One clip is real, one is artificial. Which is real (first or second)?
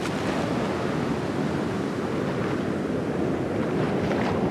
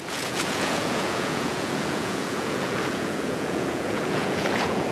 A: first